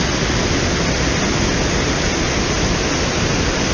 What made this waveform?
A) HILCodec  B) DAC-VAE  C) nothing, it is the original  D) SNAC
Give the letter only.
C